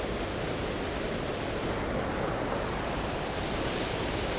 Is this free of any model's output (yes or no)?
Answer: yes